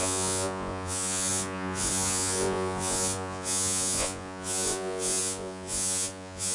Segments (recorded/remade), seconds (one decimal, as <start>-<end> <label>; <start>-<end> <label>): 0.0-6.5 remade